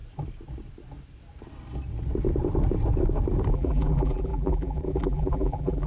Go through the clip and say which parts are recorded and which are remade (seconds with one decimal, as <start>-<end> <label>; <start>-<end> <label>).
0.0-3.5 recorded; 3.5-5.9 remade